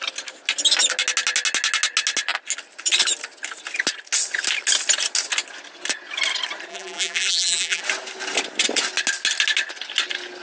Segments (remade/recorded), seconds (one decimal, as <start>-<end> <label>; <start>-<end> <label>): 0.0-6.7 recorded; 6.7-7.8 remade; 7.8-10.4 recorded